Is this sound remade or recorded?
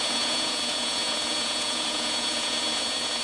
remade